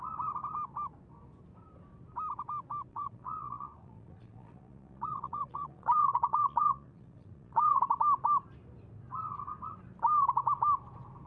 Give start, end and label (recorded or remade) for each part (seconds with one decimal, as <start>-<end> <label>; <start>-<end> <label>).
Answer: 0.0-2.9 recorded; 2.9-7.8 remade; 7.8-11.3 recorded